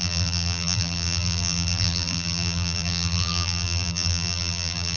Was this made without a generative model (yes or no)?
no